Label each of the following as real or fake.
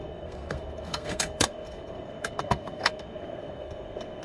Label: fake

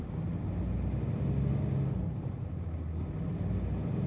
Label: real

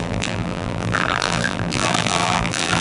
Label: fake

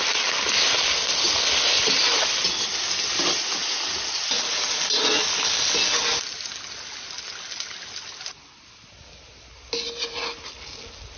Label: real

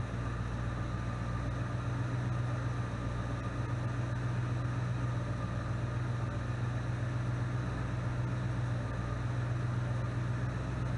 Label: real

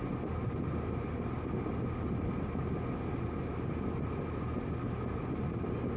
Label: real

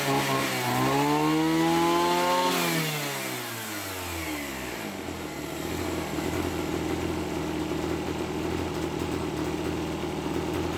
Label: real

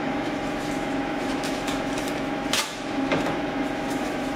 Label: fake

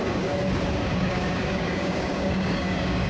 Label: fake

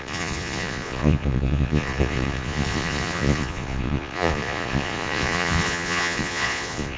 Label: fake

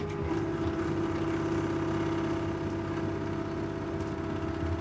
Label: real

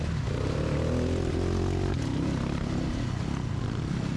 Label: real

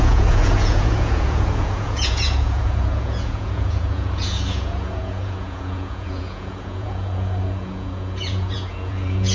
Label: fake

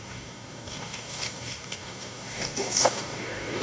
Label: fake